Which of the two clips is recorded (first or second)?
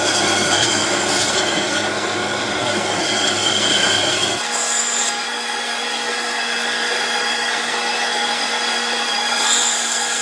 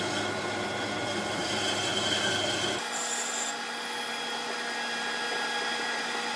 second